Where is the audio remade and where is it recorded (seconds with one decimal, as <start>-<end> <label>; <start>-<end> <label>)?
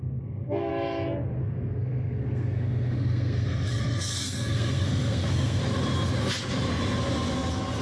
0.0-0.7 remade; 0.7-1.4 recorded; 1.4-5.6 remade; 5.6-7.8 recorded